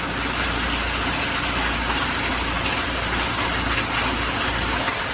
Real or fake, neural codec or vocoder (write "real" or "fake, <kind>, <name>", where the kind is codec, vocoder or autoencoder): real